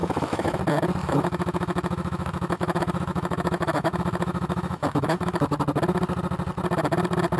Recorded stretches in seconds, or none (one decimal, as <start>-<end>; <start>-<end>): 0.6-1.0; 5.4-7.4